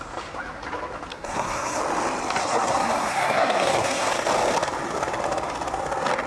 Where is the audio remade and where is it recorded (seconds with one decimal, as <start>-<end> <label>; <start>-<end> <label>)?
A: 0.0-1.1 recorded; 1.1-1.8 remade; 1.8-2.4 recorded; 2.4-4.1 remade; 4.1-6.3 recorded